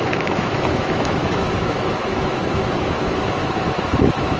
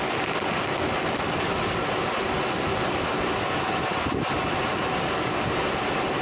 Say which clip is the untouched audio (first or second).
second